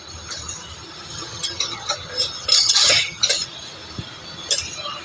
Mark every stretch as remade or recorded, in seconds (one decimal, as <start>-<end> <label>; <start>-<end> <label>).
0.0-1.1 recorded; 1.1-1.9 remade; 1.9-2.6 recorded; 2.6-3.2 remade; 3.2-5.0 recorded